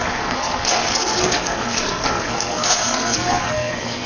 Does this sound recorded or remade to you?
remade